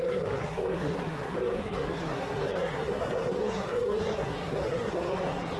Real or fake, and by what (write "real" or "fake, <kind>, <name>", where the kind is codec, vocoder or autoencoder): fake, codec, SNAC